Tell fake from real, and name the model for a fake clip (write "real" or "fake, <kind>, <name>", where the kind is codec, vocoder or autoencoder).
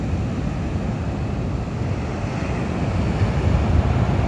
real